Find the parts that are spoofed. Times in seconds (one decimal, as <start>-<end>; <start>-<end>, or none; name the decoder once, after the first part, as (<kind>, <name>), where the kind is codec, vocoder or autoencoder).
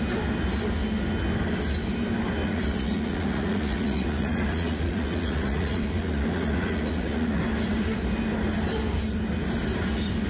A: 2.4-7.4 (vocoder, Vocos)